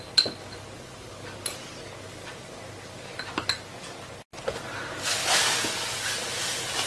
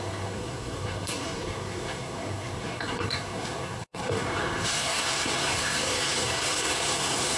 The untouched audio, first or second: first